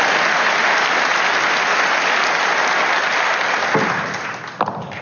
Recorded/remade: recorded